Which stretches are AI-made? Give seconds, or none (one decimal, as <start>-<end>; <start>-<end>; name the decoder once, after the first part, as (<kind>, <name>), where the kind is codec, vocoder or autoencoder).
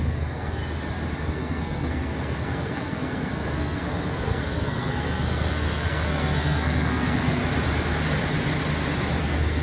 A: 0.0-0.6 (codec, SNAC); 1.3-7.4; 9.2-9.6